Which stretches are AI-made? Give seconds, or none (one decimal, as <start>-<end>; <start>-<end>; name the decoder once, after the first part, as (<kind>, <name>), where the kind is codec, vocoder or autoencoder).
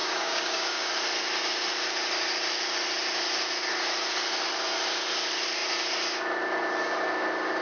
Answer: 0.0-0.9 (codec, DAC)